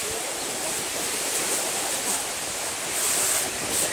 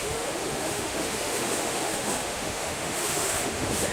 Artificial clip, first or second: second